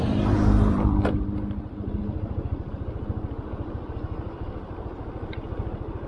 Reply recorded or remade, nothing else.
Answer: remade